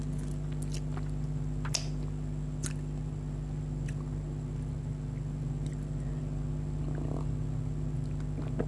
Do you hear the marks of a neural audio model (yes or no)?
no